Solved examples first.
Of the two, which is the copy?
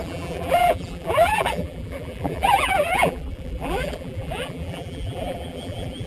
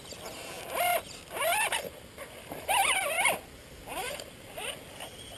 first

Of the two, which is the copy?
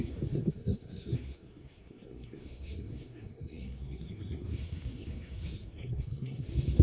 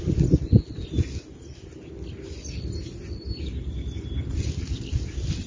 first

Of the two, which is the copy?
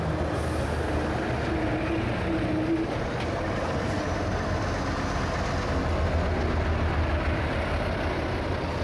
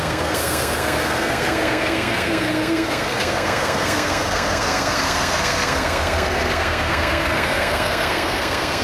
second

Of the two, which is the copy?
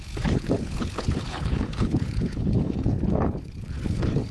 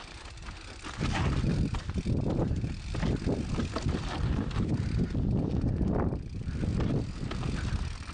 first